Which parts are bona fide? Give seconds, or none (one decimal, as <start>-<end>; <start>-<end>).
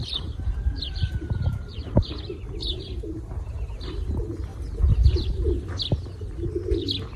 4.1-4.5; 5.7-7.2